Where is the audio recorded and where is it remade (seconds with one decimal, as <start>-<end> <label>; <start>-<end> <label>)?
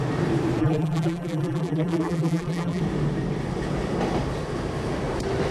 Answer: 0.0-0.6 recorded; 0.6-2.8 remade; 2.8-5.5 recorded